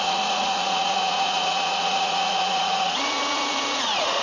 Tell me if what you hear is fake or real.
fake